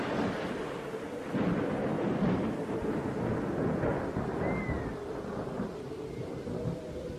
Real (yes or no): yes